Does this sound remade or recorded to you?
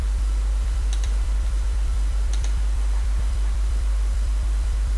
remade